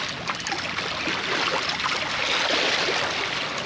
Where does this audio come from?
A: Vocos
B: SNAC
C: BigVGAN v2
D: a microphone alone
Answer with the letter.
D